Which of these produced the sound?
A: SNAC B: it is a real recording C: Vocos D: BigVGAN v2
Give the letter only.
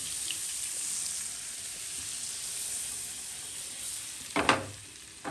B